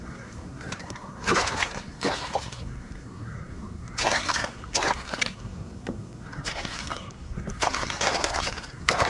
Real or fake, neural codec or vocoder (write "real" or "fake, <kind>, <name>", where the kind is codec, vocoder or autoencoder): fake, codec, SNAC